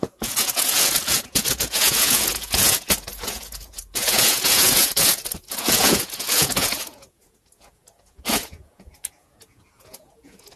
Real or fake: fake